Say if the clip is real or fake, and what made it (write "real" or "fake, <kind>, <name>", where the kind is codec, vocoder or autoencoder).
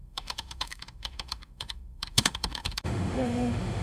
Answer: fake, autoencoder, DAC-VAE